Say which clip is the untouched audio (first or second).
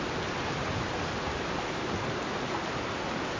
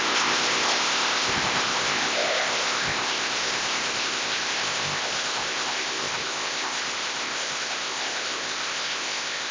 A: first